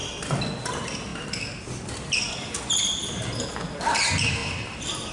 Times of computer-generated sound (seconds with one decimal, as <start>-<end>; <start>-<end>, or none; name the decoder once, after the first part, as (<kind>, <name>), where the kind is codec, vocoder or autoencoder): none